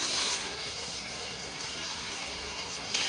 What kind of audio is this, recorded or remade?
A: remade